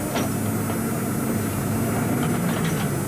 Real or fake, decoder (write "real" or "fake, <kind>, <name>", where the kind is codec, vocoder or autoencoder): real